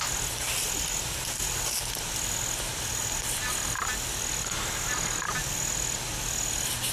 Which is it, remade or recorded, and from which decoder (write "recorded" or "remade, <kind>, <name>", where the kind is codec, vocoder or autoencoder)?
recorded